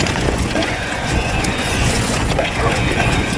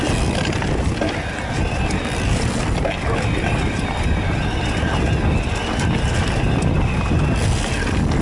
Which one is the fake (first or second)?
first